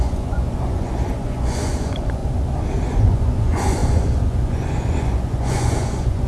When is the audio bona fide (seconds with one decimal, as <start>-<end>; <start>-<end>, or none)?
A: 2.2-2.9

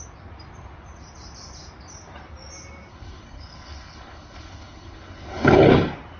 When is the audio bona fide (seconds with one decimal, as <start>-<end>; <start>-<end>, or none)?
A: 0.0-2.9; 5.6-6.2

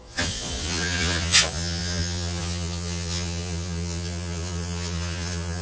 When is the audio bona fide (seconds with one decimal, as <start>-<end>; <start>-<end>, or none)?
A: none